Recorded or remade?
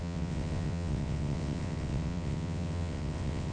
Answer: remade